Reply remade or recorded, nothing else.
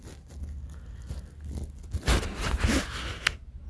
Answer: recorded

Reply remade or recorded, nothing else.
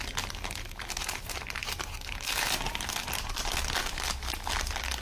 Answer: recorded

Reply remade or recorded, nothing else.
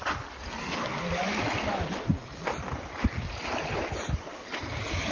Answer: recorded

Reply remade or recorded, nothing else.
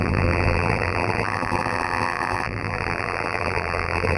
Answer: remade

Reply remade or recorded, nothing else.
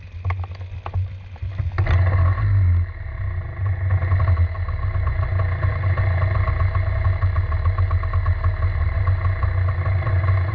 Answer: recorded